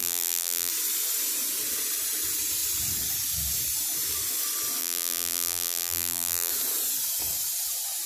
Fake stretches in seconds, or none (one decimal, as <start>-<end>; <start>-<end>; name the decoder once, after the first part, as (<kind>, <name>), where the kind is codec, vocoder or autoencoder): 0.0-0.7 (vocoder, BigVGAN v2); 4.8-6.5